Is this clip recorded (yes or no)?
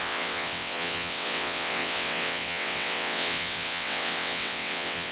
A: no